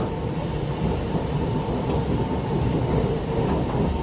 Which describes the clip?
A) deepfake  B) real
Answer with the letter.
B